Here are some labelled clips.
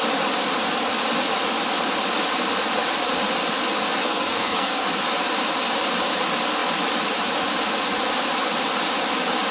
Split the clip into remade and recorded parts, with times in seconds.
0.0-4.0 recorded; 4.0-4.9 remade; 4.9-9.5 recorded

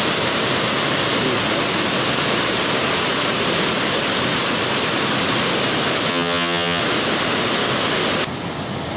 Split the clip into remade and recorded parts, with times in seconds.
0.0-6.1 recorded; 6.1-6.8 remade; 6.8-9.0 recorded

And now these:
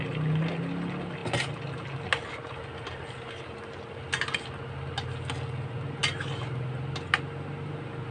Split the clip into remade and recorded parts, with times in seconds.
0.0-8.1 recorded